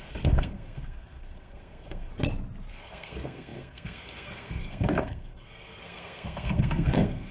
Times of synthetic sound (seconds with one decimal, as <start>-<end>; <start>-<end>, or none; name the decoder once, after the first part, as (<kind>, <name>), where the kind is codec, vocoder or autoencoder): 0.0-2.1 (codec, SNAC); 2.7-7.3